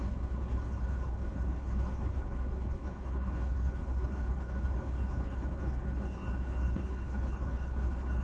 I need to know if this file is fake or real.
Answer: fake